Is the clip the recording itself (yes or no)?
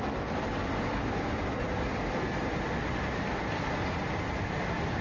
yes